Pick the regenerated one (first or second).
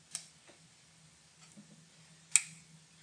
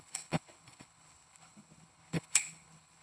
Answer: second